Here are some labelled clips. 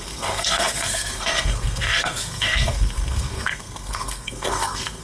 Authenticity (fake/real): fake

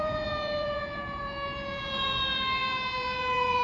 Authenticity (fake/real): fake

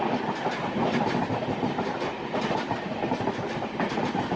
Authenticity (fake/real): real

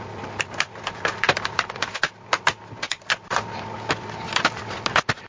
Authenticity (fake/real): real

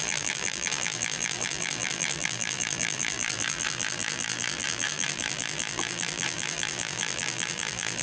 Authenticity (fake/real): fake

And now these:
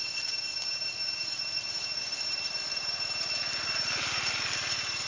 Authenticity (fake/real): real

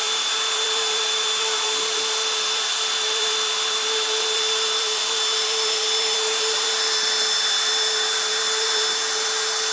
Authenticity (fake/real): fake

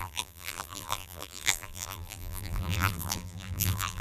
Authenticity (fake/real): fake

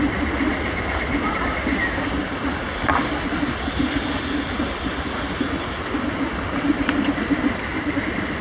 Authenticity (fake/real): real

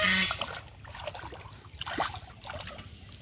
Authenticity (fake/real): real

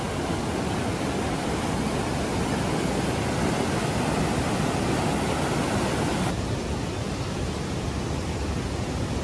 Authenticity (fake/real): real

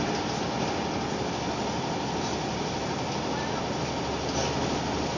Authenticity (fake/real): real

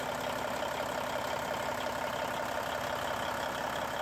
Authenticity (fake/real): real